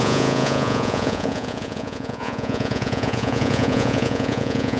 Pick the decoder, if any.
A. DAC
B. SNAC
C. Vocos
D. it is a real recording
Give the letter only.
C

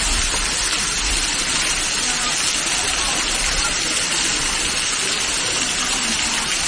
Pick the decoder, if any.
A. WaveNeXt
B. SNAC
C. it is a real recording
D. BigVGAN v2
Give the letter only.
C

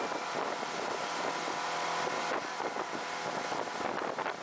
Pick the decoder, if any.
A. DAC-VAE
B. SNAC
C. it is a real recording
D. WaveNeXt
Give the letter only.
C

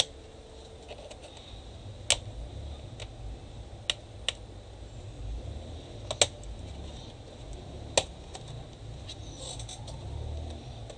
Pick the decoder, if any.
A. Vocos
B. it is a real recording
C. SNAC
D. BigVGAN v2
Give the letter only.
B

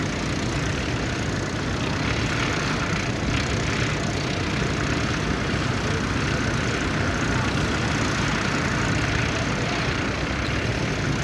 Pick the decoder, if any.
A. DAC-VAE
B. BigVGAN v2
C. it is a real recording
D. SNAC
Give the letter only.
C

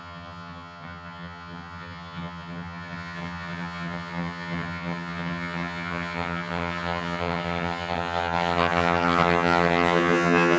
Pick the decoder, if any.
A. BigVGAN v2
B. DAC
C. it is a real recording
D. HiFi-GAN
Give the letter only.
D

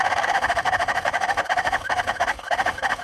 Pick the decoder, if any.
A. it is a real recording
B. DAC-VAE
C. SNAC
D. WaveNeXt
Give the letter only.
B